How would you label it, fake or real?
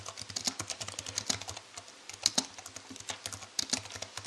real